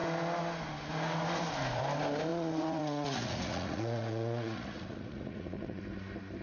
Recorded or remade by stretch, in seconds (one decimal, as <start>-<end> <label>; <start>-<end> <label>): 0.0-2.3 recorded; 2.3-5.8 remade; 5.8-6.4 recorded